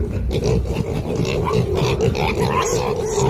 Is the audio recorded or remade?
recorded